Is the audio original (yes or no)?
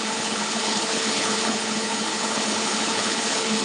no